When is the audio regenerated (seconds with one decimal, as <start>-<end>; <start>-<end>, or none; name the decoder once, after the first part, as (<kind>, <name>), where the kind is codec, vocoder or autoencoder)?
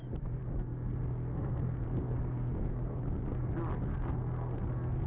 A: 0.4-3.5 (codec, SNAC); 3.9-5.1